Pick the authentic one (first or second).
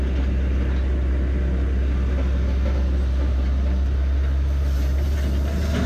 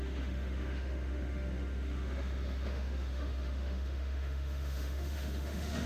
first